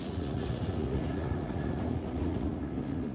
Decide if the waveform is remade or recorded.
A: remade